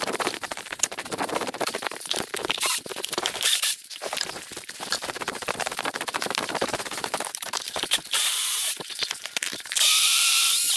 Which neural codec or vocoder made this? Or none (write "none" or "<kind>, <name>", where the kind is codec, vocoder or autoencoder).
vocoder, BigVGAN v2